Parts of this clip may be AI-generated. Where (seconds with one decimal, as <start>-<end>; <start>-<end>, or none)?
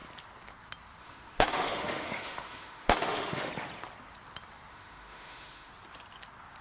1.0-3.5; 4.7-5.7